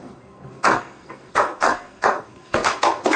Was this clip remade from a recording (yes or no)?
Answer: yes